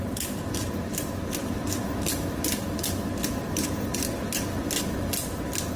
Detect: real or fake real